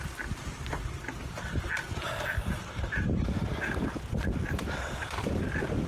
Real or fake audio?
fake